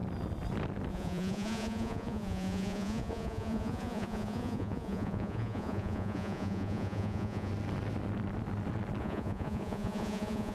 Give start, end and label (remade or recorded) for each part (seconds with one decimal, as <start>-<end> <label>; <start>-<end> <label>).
0.0-0.9 recorded; 0.9-7.5 remade; 7.5-9.0 recorded; 9.0-10.5 remade